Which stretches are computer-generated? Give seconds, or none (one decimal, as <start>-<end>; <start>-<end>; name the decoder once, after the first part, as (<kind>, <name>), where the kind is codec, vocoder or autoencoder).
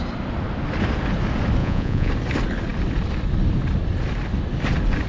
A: 1.6-2.1 (vocoder, Vocos)